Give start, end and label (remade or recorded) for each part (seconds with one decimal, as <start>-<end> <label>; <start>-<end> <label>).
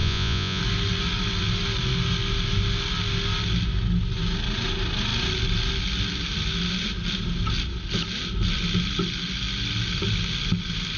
0.0-0.6 remade; 0.6-11.0 recorded